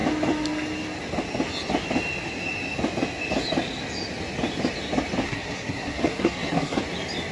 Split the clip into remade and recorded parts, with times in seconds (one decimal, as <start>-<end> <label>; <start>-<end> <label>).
0.0-5.2 recorded; 5.2-6.8 remade; 6.8-7.3 recorded